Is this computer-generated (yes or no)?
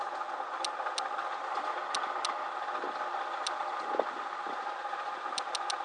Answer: no